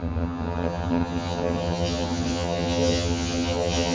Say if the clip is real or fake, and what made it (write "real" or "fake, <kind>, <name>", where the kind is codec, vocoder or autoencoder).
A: fake, vocoder, HiFi-GAN